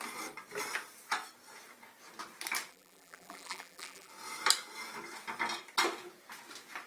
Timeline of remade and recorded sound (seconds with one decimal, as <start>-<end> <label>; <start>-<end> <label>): 0.0-2.7 recorded; 2.7-4.1 remade; 4.1-6.9 recorded

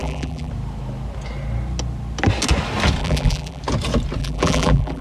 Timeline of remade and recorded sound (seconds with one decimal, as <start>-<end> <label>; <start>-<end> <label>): 0.0-0.5 remade; 0.5-3.0 recorded; 3.0-3.6 remade; 3.6-4.2 recorded; 4.2-5.0 remade

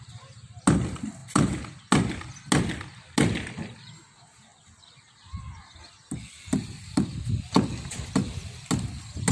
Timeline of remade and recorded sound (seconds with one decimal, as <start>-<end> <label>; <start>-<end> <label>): 0.0-1.2 recorded; 1.2-1.8 remade; 1.8-9.3 recorded

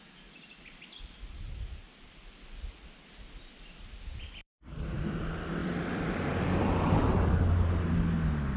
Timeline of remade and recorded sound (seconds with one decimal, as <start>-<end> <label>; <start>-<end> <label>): 0.0-4.4 recorded; 4.4-5.0 remade; 5.0-5.6 recorded; 5.6-6.7 remade; 6.7-8.6 recorded

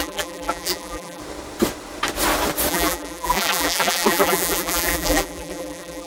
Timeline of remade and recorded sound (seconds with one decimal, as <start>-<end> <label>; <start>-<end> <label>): 0.0-1.2 remade; 1.2-2.7 recorded; 2.7-6.1 remade

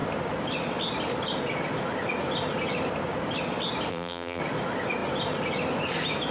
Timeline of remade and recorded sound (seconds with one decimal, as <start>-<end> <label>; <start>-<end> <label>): 0.0-3.9 recorded; 3.9-4.4 remade; 4.4-6.3 recorded